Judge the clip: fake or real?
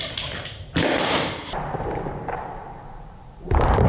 fake